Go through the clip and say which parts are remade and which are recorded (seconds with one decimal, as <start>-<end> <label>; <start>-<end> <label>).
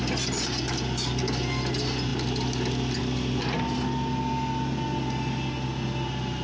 0.0-6.4 recorded